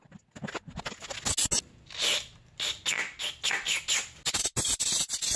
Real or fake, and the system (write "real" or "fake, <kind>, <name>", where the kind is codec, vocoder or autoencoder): real